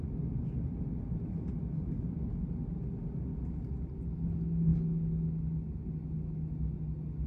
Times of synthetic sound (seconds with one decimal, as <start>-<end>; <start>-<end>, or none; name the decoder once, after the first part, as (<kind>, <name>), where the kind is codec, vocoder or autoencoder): none